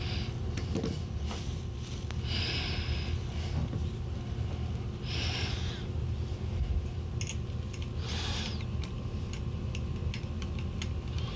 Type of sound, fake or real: real